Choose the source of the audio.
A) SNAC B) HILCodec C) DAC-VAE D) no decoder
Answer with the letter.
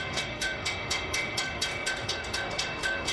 C